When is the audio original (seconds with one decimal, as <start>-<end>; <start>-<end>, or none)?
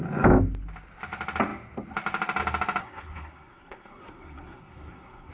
0.0-2.8